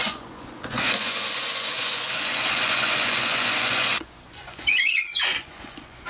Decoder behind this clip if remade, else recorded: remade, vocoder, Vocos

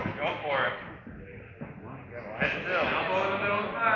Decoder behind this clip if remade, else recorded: recorded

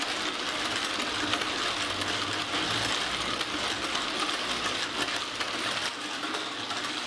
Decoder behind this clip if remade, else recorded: recorded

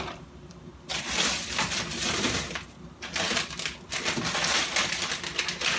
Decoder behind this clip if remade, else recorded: recorded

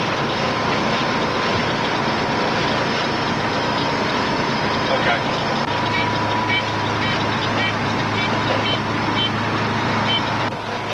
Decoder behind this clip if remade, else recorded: recorded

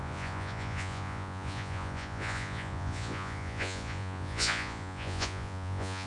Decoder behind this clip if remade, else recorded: remade, vocoder, Vocos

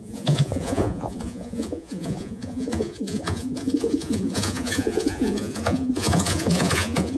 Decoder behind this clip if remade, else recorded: remade, vocoder, Vocos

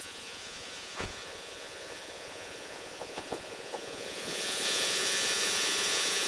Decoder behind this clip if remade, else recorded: remade, vocoder, Vocos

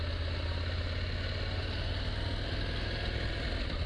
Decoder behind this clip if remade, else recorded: recorded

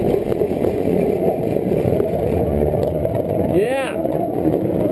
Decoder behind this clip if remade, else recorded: remade, vocoder, Vocos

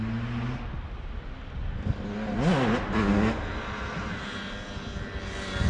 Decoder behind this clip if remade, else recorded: recorded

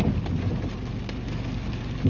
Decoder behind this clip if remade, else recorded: recorded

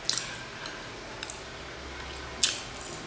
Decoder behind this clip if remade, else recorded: recorded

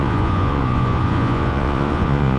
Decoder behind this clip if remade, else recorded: remade, vocoder, Vocos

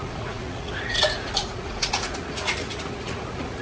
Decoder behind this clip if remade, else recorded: remade, vocoder, Vocos